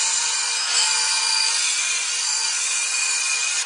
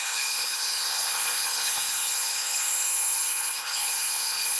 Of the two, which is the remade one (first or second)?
second